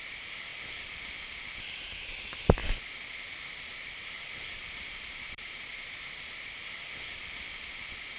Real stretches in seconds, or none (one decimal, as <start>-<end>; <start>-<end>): 0.0-3.7; 6.1-8.2